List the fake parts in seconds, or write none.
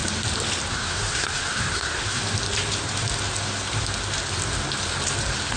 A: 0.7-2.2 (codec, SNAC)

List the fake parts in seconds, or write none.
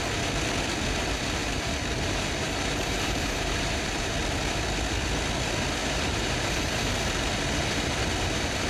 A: 1.4-4.1 (vocoder, BigVGAN v2); 5.8-6.9